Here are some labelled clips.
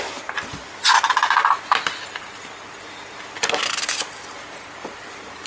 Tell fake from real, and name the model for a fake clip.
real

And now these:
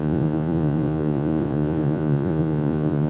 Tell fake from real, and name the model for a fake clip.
fake, vocoder, Vocos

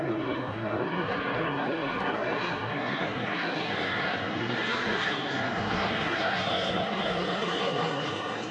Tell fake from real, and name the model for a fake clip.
fake, codec, SNAC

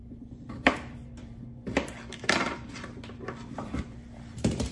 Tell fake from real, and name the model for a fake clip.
fake, vocoder, BigVGAN v2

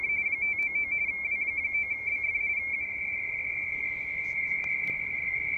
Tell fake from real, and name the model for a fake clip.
fake, vocoder, BigVGAN v2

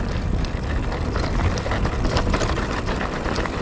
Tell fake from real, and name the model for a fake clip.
real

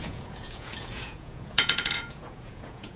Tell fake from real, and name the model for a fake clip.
fake, vocoder, Vocos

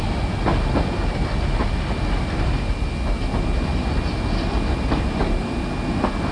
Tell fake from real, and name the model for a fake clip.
real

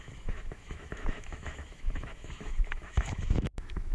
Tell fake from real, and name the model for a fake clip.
fake, autoencoder, DAC-VAE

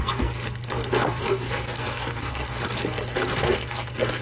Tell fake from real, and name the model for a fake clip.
fake, codec, SNAC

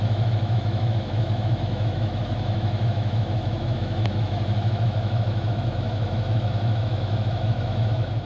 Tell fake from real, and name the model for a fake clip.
fake, autoencoder, DAC-VAE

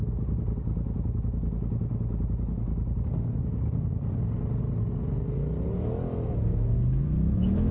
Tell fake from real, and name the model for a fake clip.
real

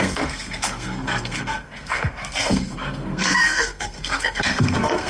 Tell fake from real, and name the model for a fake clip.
fake, codec, SNAC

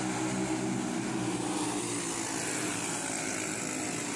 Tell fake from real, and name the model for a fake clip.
real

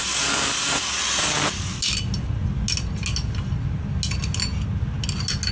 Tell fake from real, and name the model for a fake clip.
real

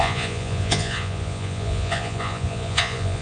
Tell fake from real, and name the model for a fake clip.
fake, vocoder, Vocos